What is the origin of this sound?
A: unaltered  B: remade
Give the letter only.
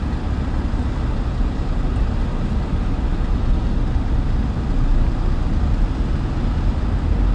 A